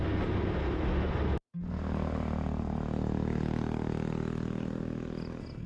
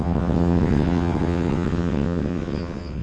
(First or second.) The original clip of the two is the first